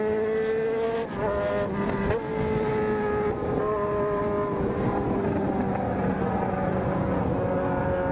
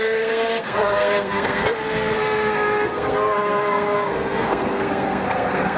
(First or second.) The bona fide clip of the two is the first